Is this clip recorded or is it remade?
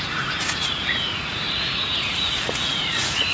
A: remade